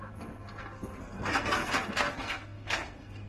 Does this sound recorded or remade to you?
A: remade